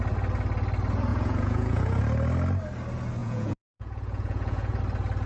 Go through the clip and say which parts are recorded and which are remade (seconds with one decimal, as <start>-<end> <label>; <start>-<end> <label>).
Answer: 0.0-1.1 recorded; 1.1-2.0 remade; 2.0-3.2 recorded; 3.2-4.8 remade; 4.8-5.3 recorded